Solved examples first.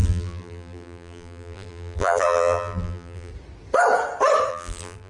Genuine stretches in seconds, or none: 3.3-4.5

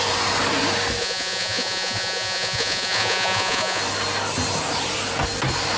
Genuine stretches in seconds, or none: 0.0-1.0; 3.8-5.8

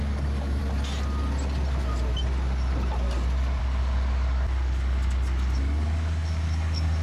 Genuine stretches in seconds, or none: 0.6-3.6

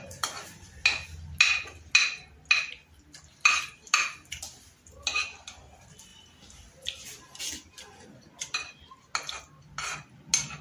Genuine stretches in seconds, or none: 0.0-10.6

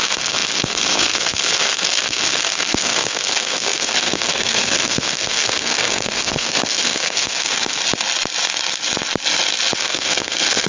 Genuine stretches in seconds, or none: 7.8-9.8